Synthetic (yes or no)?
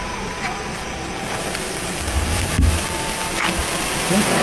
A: no